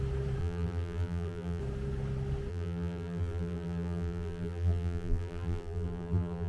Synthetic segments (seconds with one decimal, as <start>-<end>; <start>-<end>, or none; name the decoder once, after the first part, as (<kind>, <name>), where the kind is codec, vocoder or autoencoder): 0.4-1.6 (vocoder, BigVGAN v2); 2.5-6.5